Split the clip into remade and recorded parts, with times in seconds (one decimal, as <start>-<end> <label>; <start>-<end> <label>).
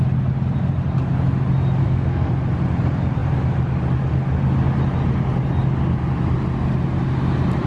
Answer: 0.0-1.8 recorded; 1.8-2.3 remade; 2.3-7.7 recorded